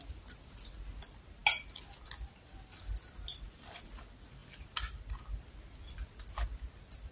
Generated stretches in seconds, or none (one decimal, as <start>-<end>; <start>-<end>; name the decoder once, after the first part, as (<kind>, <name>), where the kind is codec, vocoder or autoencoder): none